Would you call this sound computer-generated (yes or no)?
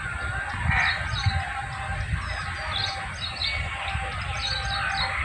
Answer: no